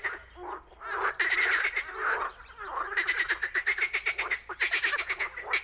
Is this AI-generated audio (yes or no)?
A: no